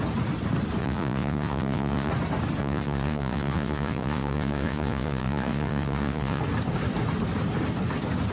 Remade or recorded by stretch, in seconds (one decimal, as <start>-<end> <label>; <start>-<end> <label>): 0.0-0.8 recorded; 0.8-2.1 remade; 2.1-2.6 recorded; 2.6-6.4 remade; 6.4-8.3 recorded